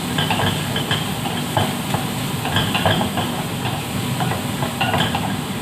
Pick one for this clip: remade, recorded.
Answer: remade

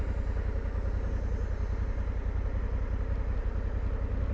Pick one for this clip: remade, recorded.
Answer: recorded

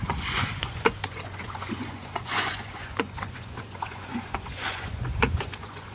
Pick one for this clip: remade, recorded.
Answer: remade